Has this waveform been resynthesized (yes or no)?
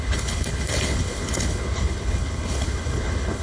yes